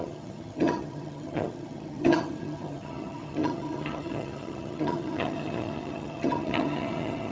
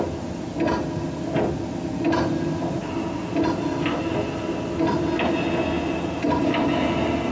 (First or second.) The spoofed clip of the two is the first